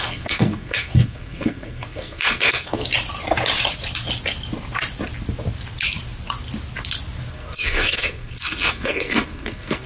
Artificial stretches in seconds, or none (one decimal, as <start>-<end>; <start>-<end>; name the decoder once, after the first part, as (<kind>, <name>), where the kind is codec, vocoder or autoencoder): 0.0-2.8 (codec, SNAC); 7.3-9.9